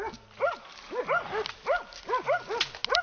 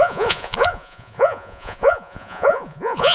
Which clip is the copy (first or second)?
second